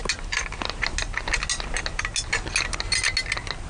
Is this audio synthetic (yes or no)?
no